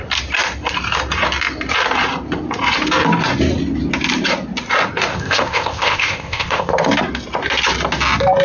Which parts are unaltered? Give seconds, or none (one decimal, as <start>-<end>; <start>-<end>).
0.0-5.1; 6.7-8.4